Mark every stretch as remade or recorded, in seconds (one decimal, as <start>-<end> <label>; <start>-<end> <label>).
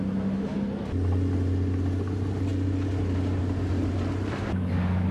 0.0-5.1 recorded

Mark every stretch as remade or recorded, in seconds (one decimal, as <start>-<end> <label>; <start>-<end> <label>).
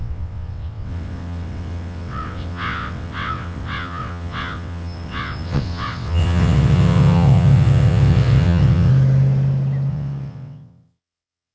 0.0-8.9 remade; 8.9-9.9 recorded; 9.9-11.5 remade